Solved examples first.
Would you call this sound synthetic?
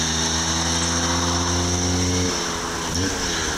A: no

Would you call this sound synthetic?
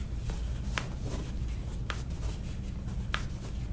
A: no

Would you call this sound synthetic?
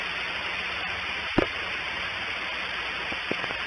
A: no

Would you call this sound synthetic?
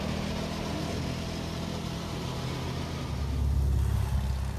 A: no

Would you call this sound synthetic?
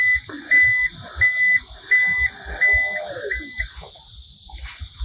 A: no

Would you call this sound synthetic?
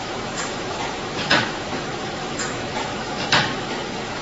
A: yes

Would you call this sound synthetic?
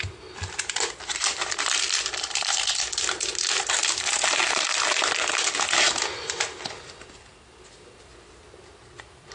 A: no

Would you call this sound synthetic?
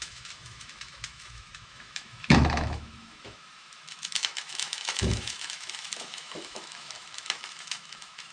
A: yes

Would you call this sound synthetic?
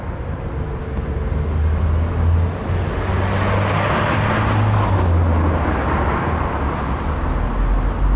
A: no